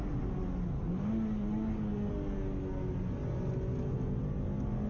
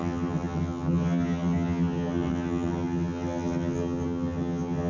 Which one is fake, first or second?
second